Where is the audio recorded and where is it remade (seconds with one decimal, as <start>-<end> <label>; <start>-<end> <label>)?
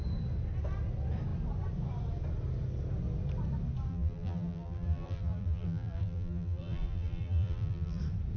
0.0-3.9 recorded; 3.9-8.0 remade; 8.0-8.4 recorded